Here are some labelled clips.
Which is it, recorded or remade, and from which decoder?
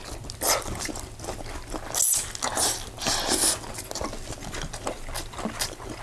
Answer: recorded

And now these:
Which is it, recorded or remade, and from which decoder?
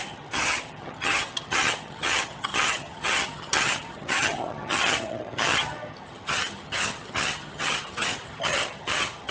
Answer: remade, vocoder, HiFi-GAN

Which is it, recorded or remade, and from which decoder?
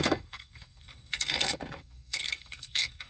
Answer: remade, codec, SNAC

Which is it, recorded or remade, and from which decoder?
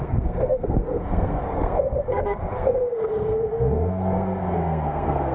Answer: remade, codec, SNAC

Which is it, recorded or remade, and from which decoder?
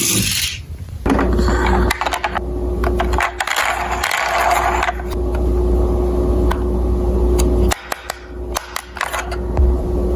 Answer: recorded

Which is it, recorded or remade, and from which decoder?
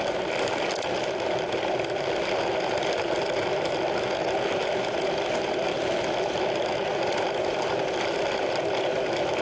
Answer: recorded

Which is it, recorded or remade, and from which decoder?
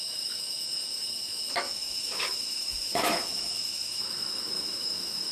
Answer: remade, autoencoder, DAC-VAE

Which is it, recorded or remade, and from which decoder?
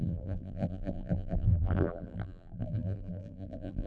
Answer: remade, vocoder, BigVGAN v2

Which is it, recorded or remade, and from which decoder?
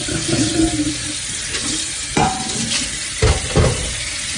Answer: remade, vocoder, BigVGAN v2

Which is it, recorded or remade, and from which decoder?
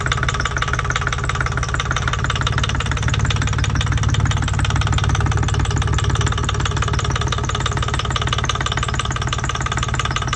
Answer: recorded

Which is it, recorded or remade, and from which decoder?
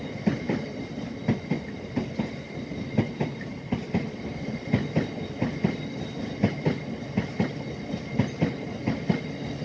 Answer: recorded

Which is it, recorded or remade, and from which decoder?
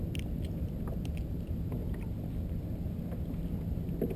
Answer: recorded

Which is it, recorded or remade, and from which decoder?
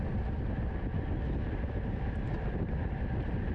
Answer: recorded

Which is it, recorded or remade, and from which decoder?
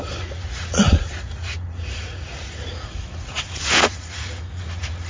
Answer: remade, vocoder, Vocos